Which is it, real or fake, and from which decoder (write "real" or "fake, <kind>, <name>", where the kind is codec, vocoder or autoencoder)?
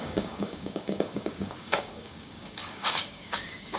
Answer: fake, codec, DAC